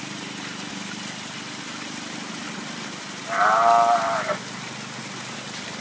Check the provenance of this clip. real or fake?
real